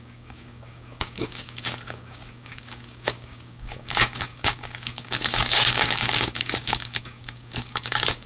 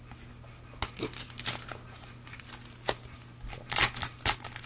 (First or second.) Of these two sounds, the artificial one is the first